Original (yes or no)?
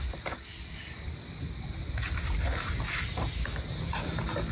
yes